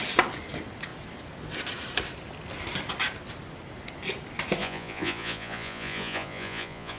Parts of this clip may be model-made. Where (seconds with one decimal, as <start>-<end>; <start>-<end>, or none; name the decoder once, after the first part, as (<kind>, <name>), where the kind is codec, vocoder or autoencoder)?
4.6-7.0 (vocoder, Vocos)